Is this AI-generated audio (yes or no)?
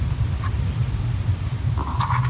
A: no